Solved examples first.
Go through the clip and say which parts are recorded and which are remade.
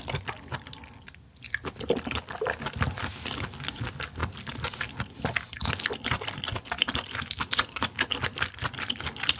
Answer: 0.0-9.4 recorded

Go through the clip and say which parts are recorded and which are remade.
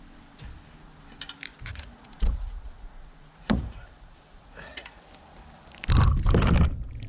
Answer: 0.0-1.5 recorded; 1.5-5.1 remade; 5.1-7.1 recorded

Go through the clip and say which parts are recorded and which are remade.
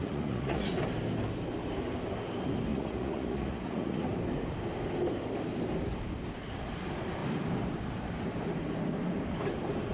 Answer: 0.0-0.7 remade; 0.7-2.7 recorded; 2.7-4.0 remade; 4.0-9.9 recorded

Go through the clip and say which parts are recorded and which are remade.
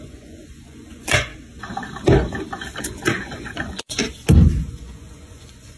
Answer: 0.0-1.3 remade; 1.3-2.8 recorded; 2.8-4.0 remade; 4.0-4.7 recorded; 4.7-5.8 remade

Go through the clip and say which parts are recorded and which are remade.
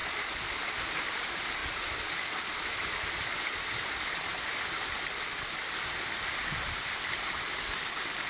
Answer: 0.0-8.3 recorded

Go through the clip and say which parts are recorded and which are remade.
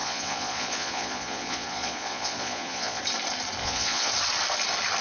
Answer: 0.0-3.0 remade; 3.0-3.6 recorded; 3.6-4.1 remade; 4.1-5.0 recorded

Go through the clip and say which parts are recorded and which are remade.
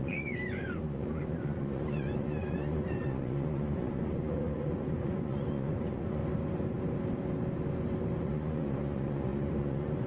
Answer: 0.0-6.2 remade; 6.2-8.2 recorded; 8.2-10.1 remade